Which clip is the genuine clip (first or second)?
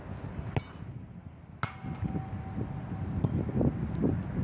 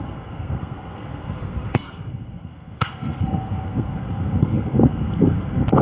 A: first